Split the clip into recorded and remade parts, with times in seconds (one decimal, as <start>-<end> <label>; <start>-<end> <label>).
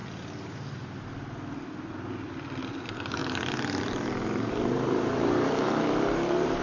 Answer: 0.0-2.6 recorded; 2.6-6.6 remade